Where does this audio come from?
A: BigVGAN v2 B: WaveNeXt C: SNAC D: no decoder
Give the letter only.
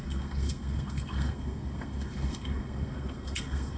C